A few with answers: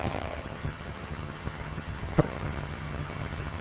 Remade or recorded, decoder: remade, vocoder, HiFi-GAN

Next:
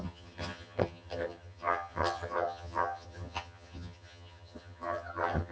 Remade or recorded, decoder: remade, vocoder, HiFi-GAN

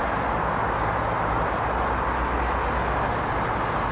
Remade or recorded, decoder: recorded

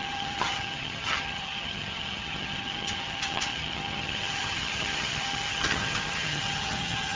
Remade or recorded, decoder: remade, vocoder, HiFi-GAN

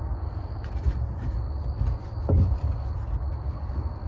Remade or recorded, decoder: recorded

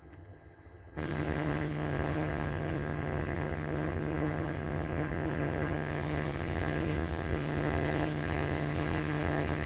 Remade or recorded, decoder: remade, vocoder, HiFi-GAN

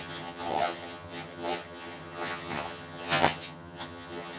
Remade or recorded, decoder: remade, vocoder, HiFi-GAN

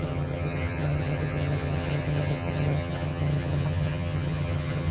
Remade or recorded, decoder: remade, vocoder, HiFi-GAN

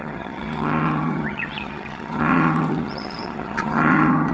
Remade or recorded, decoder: remade, vocoder, HiFi-GAN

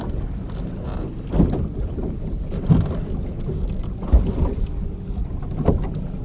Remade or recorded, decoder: recorded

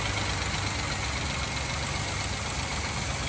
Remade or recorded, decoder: recorded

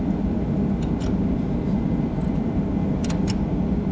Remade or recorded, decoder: recorded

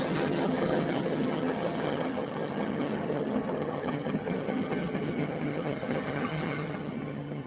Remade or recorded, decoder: remade, vocoder, HiFi-GAN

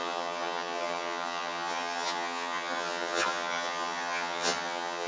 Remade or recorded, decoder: remade, vocoder, HiFi-GAN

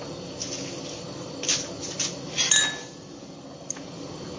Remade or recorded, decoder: recorded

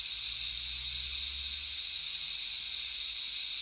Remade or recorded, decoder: recorded